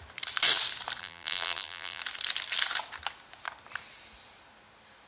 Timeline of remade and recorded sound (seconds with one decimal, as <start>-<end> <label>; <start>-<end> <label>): 0.0-1.0 recorded; 1.0-2.0 remade; 2.0-5.1 recorded